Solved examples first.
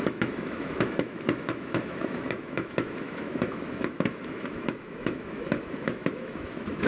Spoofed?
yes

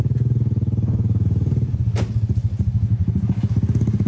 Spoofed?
no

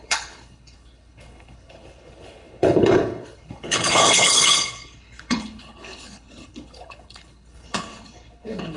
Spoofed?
yes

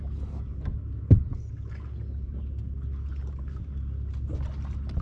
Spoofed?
no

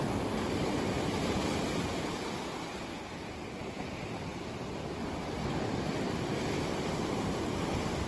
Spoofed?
no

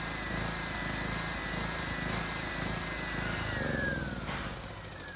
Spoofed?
no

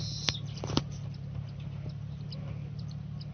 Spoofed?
no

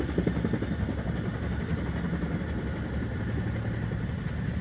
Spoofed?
no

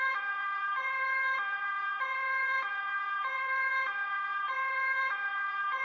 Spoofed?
yes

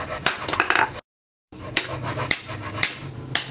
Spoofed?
no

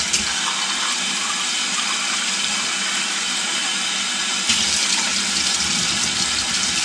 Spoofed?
no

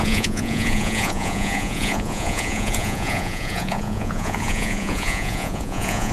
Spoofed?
yes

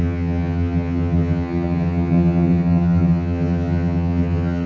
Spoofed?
yes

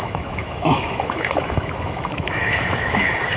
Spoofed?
yes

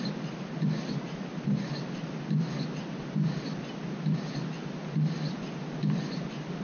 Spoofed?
no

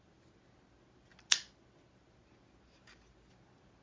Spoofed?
no